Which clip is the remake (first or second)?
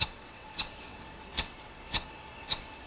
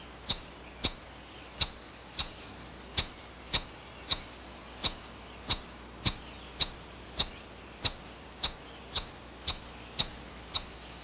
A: first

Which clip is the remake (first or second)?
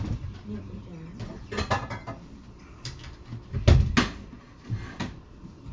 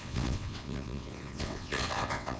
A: second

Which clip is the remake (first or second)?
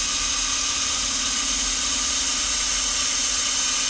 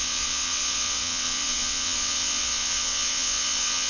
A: second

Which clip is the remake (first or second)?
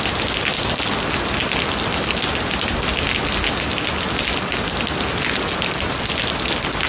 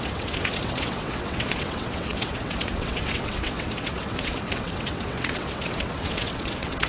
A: second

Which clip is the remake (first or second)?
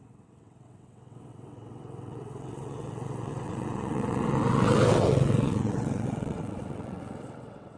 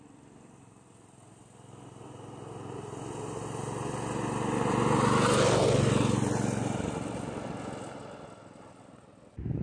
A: first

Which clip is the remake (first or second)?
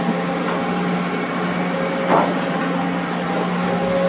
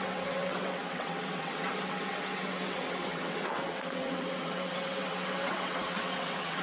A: second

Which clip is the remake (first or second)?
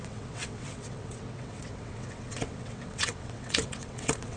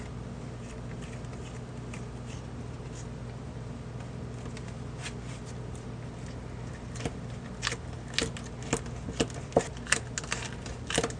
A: first